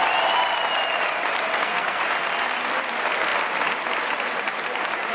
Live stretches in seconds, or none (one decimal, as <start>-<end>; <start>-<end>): 0.0-1.5; 2.0-5.1